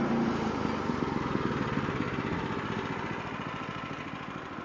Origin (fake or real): real